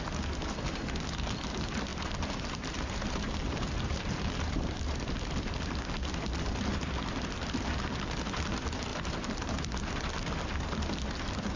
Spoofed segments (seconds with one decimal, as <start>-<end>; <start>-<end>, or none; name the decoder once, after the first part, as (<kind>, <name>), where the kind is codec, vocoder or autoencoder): 1.9-4.8 (vocoder, BigVGAN v2); 8.9-9.6